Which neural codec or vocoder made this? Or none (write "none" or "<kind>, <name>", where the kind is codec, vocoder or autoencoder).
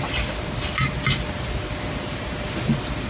none